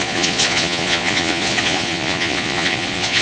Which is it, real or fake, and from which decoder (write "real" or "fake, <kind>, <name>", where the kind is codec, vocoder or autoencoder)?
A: fake, vocoder, Vocos